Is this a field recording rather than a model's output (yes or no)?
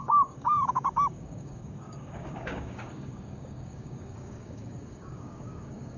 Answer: no